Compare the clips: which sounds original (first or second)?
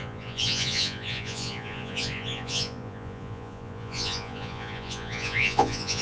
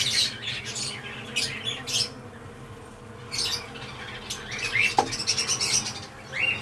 second